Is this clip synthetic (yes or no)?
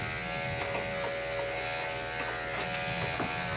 no